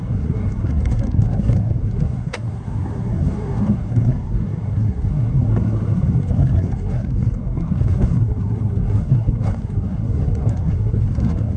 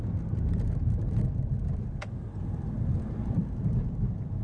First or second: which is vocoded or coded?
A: first